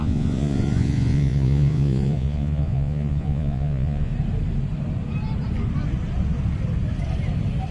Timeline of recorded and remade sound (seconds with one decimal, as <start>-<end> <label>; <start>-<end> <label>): 0.0-4.1 remade; 4.1-7.7 recorded